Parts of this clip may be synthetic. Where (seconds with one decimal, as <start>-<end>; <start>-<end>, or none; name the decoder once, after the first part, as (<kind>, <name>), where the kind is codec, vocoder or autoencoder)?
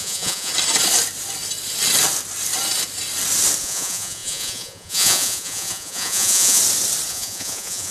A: 0.0-0.5 (vocoder, Vocos); 3.6-6.6; 7.1-7.9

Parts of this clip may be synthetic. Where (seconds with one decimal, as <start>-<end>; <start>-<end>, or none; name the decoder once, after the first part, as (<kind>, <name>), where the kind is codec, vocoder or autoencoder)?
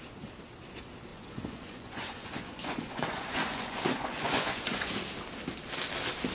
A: 1.1-4.9 (vocoder, Vocos)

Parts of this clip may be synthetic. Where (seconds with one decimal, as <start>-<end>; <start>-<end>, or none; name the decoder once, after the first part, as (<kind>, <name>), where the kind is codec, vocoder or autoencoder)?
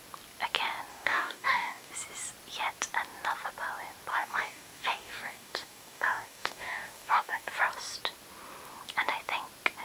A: 0.9-1.9 (codec, DAC); 4.1-7.5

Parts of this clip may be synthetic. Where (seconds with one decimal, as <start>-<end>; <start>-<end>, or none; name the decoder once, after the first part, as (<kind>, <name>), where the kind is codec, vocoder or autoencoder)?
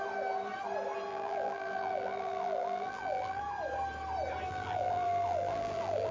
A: 1.1-3.4 (vocoder, BigVGAN v2); 4.5-6.1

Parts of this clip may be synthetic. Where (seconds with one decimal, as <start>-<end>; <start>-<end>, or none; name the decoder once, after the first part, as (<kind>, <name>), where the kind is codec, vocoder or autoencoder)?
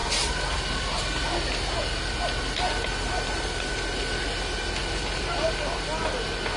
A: none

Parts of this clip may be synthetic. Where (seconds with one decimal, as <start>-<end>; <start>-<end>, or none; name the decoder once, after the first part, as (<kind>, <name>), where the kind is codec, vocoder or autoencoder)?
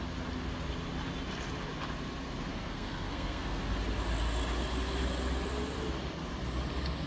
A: 2.5-3.6 (codec, SNAC)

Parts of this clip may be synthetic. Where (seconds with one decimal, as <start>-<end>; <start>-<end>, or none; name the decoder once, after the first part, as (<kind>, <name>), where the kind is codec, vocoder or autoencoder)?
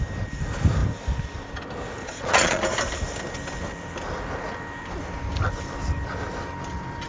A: 2.0-2.6 (vocoder, Vocos)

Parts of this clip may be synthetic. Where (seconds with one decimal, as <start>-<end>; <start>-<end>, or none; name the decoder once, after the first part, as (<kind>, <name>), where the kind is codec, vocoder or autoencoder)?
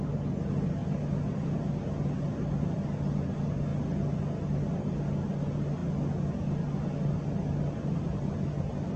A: none